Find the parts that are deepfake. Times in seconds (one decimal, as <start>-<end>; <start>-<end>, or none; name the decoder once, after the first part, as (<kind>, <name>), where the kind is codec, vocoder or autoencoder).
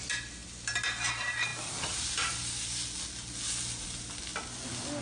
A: none